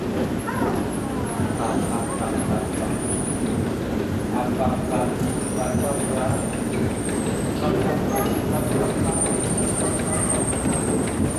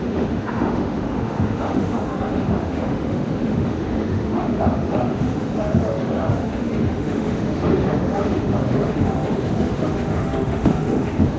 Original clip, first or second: first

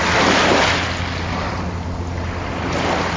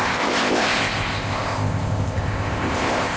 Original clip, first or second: first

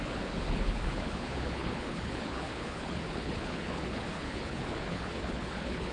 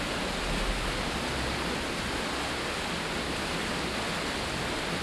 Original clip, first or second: second